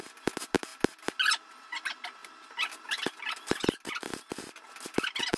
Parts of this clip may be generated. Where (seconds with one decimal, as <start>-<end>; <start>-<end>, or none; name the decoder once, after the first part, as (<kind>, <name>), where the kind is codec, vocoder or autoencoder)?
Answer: none

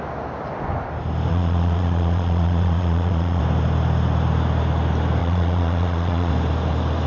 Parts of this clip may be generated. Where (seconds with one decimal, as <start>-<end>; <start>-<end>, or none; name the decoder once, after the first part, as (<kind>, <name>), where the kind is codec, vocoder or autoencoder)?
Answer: 1.3-3.4 (vocoder, Vocos); 5.2-6.3

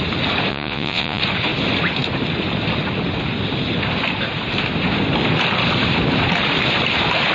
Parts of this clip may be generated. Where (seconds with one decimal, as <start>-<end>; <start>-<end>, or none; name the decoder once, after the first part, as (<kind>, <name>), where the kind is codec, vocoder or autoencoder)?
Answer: 0.5-1.2 (vocoder, Vocos)

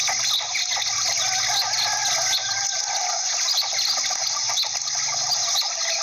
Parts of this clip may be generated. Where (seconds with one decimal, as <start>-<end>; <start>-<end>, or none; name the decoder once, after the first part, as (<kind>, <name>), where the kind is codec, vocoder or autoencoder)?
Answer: none

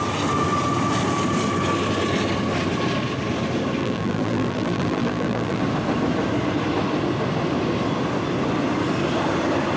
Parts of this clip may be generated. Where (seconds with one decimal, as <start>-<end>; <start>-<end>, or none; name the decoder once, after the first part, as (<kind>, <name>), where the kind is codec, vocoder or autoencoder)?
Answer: 3.8-5.6 (vocoder, BigVGAN v2)

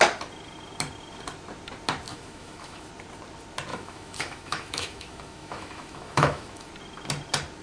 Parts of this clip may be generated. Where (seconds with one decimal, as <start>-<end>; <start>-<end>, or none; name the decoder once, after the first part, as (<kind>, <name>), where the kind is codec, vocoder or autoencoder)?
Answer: 2.1-2.9 (autoencoder, DAC-VAE); 3.7-6.7

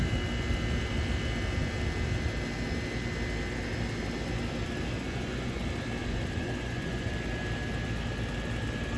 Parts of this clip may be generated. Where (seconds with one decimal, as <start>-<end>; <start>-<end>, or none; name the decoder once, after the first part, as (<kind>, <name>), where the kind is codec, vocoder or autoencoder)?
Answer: 5.0-5.6 (vocoder, Vocos); 6.0-7.1